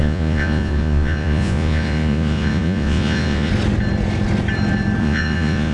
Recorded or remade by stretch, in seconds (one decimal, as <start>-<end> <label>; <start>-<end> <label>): 0.0-3.5 remade; 3.5-5.0 recorded; 5.0-5.7 remade